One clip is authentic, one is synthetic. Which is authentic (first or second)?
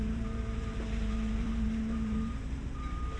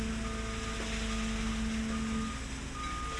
second